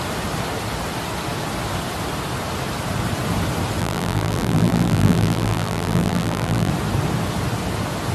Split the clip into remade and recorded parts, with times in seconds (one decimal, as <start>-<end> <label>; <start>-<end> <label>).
0.0-3.8 recorded; 3.8-6.7 remade; 6.7-8.1 recorded